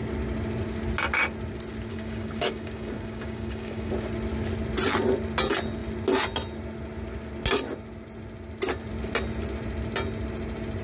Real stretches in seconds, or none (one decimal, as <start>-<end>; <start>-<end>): 0.0-1.9; 3.9-10.8